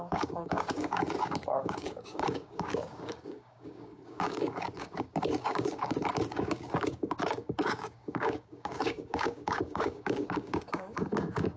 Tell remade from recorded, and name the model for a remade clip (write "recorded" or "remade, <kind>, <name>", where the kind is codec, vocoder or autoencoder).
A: remade, codec, DAC